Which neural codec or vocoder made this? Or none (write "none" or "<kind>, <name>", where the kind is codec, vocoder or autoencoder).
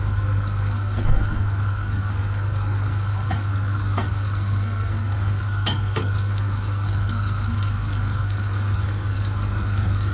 codec, SNAC